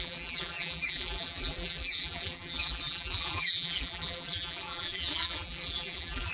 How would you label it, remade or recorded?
remade